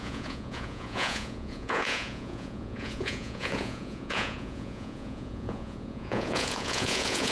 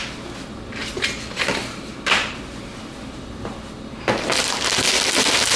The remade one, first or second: first